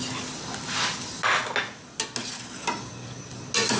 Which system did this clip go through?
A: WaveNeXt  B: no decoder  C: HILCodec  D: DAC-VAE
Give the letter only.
B